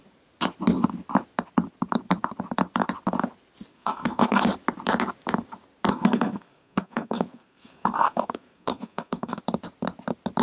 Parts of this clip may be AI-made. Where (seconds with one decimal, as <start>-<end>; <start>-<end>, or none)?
3.7-4.4; 5.9-9.4